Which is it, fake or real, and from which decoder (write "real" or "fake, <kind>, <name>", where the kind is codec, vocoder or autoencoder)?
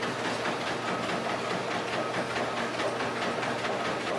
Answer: real